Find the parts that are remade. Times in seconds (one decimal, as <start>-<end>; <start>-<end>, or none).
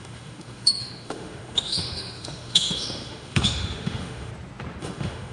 0.0-4.3; 4.8-5.3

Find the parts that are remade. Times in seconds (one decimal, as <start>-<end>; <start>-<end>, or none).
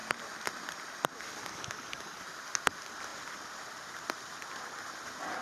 1.5-2.2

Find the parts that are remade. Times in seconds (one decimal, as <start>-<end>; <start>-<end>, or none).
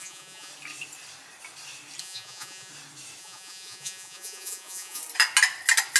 0.0-0.5; 2.0-2.7; 3.2-5.0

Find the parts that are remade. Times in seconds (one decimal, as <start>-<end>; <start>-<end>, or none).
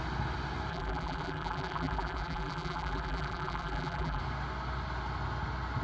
0.7-4.2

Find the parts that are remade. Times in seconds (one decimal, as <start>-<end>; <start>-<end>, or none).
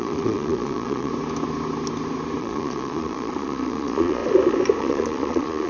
0.0-1.1; 2.4-4.2; 4.8-5.7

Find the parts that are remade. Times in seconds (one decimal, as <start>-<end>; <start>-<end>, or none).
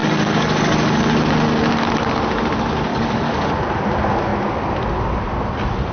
0.0-1.1; 2.9-3.5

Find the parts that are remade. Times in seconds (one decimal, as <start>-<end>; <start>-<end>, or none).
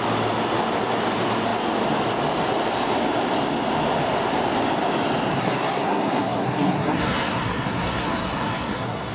5.4-9.1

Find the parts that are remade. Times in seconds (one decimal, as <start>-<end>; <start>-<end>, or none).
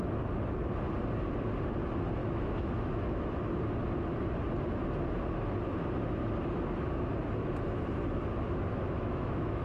2.2-3.3; 8.7-9.6